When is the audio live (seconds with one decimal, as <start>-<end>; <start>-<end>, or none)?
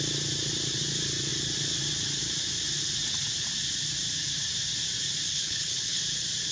0.0-5.3; 6.0-6.5